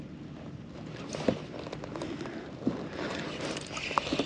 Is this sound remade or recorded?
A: recorded